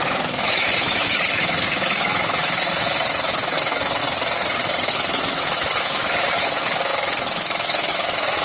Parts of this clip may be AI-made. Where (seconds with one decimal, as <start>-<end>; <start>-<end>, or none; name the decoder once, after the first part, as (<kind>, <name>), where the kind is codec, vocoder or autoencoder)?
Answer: 0.0-4.0 (autoencoder, DAC-VAE); 4.9-8.4